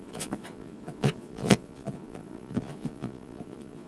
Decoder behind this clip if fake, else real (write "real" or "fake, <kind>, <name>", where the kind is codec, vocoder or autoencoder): fake, vocoder, Vocos